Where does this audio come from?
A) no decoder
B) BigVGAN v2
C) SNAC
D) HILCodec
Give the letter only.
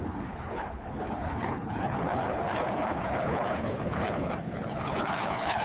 D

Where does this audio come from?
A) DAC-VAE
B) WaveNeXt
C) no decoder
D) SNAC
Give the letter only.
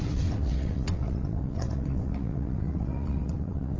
B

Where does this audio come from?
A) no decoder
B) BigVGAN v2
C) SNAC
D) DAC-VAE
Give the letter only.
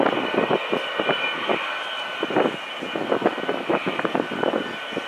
A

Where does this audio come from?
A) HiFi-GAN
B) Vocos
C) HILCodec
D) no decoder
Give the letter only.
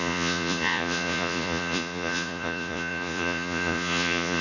B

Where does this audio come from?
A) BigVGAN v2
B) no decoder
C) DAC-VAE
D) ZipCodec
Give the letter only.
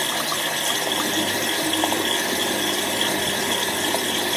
B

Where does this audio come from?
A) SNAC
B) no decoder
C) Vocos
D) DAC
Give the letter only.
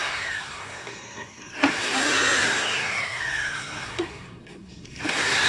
A